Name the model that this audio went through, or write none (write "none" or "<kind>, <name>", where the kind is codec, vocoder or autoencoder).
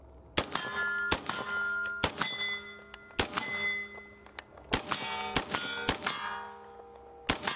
none